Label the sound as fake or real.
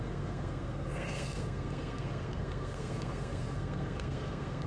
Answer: fake